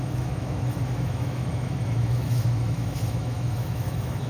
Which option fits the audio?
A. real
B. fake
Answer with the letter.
B